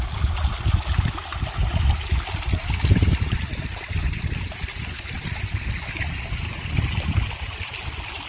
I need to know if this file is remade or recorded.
recorded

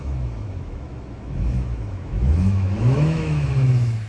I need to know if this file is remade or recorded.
remade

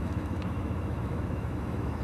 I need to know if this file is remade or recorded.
remade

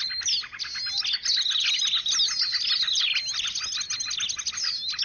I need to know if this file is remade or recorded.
recorded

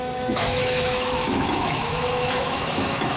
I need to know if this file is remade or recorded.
remade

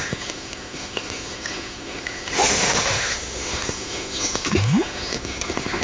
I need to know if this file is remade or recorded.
remade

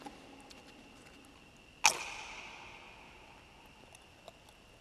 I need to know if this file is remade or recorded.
recorded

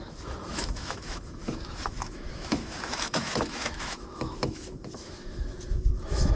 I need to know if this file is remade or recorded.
remade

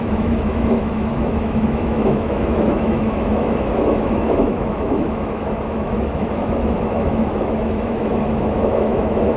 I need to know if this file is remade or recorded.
remade